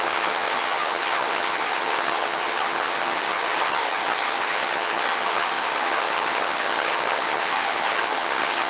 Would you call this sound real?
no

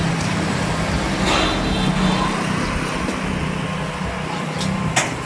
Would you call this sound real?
yes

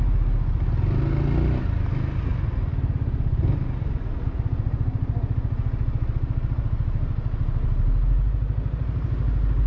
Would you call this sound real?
yes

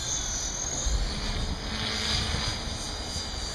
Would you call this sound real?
yes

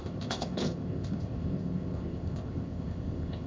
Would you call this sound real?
no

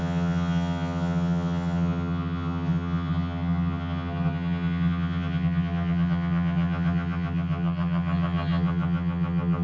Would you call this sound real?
no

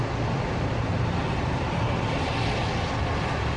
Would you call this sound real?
yes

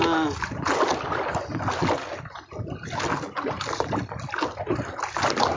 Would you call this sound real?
yes